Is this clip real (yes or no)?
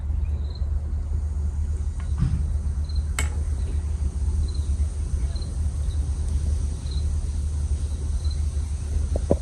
yes